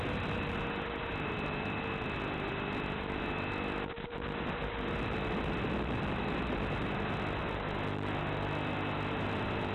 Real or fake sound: real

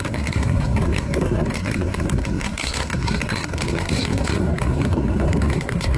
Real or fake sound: fake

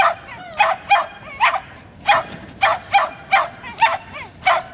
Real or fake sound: real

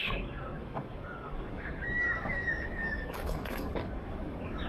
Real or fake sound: fake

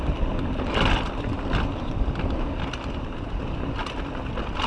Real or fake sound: real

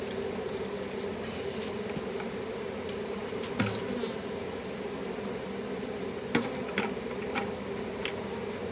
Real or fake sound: real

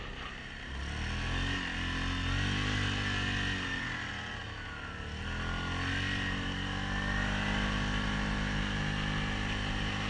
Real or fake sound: real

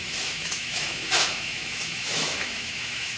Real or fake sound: fake